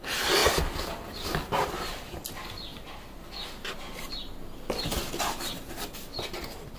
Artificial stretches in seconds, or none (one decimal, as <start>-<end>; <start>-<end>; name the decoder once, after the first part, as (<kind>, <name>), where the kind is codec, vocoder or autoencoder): none